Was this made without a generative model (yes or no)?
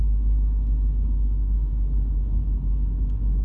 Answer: yes